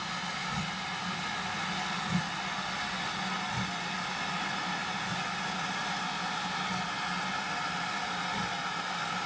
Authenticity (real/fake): real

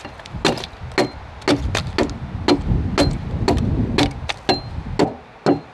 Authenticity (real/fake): real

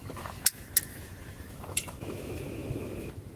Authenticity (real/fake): fake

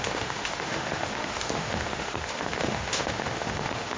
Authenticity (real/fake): fake